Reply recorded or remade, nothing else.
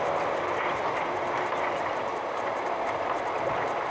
recorded